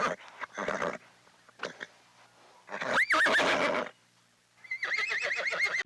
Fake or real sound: real